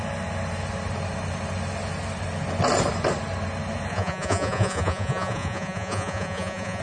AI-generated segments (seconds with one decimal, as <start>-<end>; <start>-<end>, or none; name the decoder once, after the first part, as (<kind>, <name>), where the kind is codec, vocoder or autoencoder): 3.9-6.8 (vocoder, Vocos)